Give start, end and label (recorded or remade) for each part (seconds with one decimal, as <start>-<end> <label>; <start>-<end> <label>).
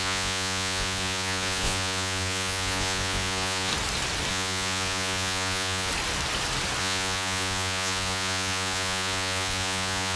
0.0-3.7 remade; 3.7-4.3 recorded; 4.3-5.9 remade; 5.9-6.8 recorded; 6.8-10.2 remade